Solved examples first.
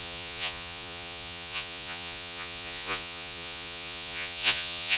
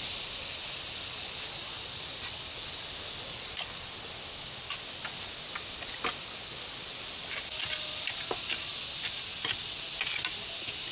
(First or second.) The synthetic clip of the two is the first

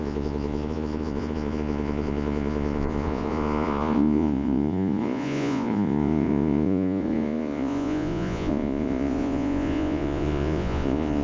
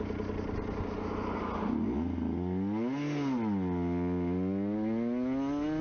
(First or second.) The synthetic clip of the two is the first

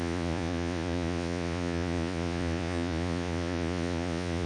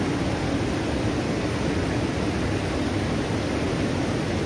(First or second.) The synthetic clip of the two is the first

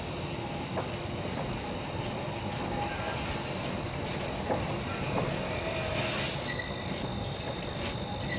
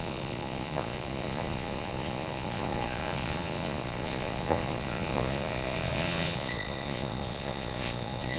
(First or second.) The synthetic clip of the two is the second